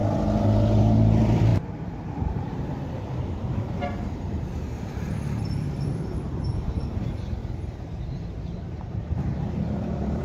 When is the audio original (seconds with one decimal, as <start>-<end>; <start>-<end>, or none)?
0.0-0.8; 4.7-5.4